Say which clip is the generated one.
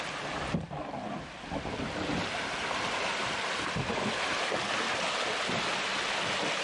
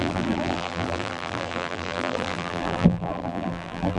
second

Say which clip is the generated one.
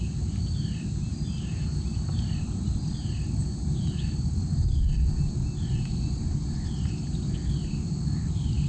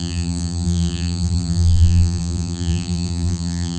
second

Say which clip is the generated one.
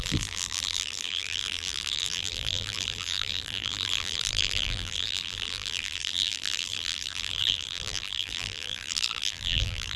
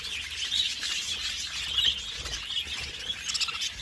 first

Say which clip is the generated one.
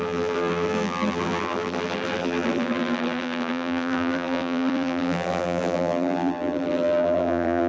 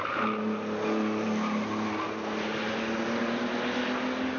first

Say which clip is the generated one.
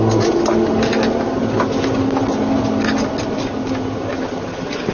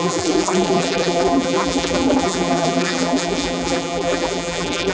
second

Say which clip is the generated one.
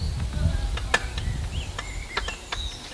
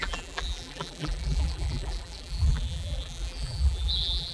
second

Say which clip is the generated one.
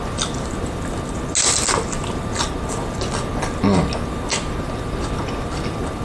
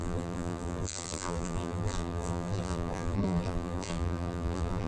second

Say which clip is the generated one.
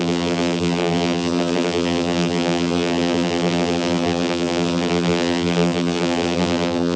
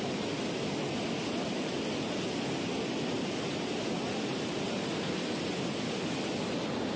first